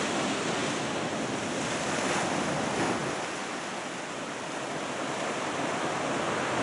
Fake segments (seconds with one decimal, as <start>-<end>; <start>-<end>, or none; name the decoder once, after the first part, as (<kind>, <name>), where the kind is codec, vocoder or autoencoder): none